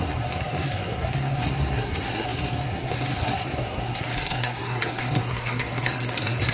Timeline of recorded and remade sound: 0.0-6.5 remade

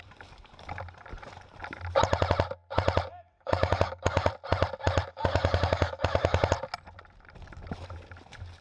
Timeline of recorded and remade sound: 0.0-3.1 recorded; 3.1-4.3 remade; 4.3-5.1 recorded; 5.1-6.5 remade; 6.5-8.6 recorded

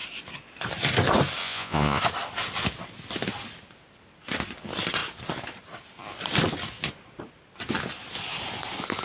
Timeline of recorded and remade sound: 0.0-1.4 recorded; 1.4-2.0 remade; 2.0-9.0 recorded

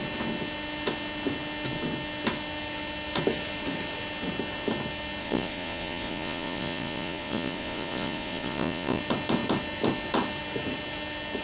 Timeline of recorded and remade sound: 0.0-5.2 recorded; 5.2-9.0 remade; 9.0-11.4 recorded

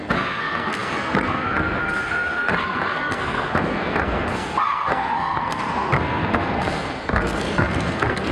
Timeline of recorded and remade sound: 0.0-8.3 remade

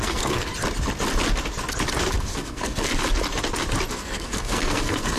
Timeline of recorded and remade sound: 0.0-0.5 remade; 0.5-2.2 recorded; 2.2-2.9 remade; 2.9-3.9 recorded; 3.9-5.2 remade

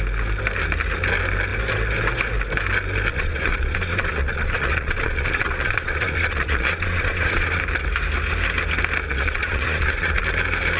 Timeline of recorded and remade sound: 0.0-3.1 recorded; 3.1-7.6 remade; 7.6-9.1 recorded; 9.1-10.2 remade; 10.2-10.8 recorded

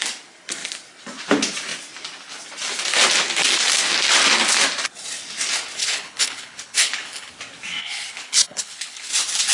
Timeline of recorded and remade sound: 0.0-5.8 recorded; 5.8-7.3 remade; 7.3-7.8 recorded; 7.8-9.1 remade; 9.1-9.5 recorded